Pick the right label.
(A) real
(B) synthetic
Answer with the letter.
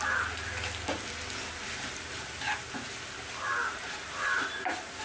A